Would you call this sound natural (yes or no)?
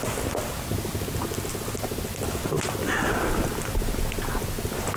yes